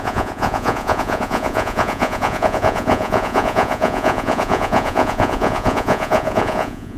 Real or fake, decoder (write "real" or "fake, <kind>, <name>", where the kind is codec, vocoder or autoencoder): fake, vocoder, Vocos